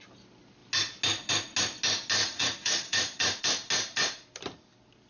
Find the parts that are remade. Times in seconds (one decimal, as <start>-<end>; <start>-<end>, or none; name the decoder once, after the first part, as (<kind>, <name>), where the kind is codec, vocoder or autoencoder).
2.2-3.4 (vocoder, Vocos)